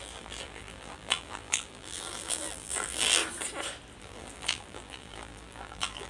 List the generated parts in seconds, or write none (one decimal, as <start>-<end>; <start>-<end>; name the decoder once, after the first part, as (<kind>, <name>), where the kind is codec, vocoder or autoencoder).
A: 0.0-3.2 (vocoder, BigVGAN v2); 4.0-6.1